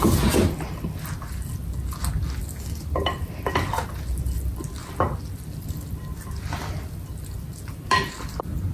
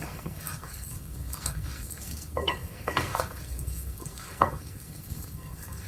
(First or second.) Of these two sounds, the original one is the first